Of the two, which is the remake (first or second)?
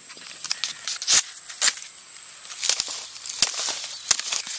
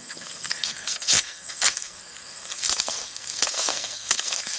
second